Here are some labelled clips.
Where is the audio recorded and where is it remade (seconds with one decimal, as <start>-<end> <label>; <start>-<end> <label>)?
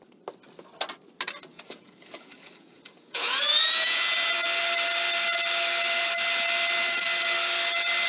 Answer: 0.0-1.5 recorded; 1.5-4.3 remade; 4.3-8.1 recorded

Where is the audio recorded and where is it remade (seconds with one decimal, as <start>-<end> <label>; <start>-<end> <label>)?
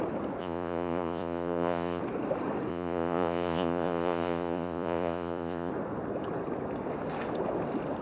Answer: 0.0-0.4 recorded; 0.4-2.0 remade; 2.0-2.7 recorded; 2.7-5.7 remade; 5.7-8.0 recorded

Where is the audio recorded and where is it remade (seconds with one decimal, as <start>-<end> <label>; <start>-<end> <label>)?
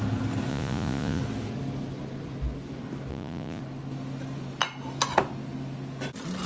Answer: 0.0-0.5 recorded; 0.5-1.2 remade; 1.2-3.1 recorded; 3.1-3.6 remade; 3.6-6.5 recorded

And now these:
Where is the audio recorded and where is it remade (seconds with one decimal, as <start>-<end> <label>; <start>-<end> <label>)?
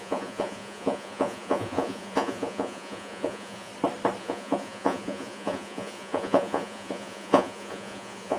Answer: 0.0-3.7 remade; 3.7-4.2 recorded; 4.2-8.4 remade